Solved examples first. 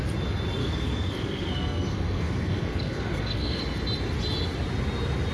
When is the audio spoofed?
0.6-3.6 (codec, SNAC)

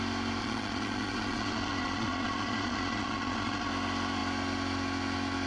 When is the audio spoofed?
0.4-3.7 (vocoder, Vocos)

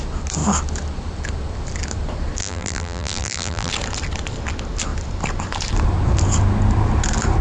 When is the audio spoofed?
2.4-3.7 (vocoder, BigVGAN v2)

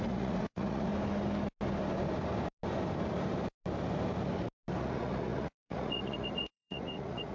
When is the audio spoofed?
0.0-0.9 (vocoder, Vocos); 4.8-7.3

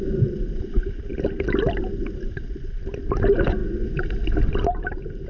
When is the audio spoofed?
none